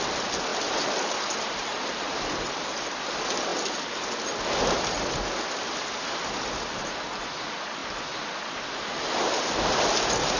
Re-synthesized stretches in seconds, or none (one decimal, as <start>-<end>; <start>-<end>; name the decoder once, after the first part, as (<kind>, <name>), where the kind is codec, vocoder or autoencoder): none